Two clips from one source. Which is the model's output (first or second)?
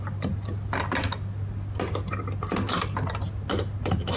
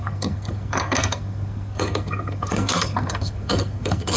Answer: second